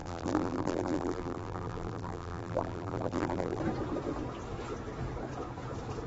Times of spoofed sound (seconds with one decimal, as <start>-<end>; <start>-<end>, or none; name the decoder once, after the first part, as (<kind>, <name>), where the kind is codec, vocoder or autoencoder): 0.0-3.6 (vocoder, BigVGAN v2)